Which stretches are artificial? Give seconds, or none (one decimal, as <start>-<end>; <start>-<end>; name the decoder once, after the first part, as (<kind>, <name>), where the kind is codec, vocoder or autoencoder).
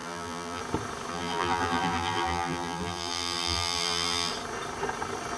0.0-0.6 (vocoder, BigVGAN v2); 1.1-4.3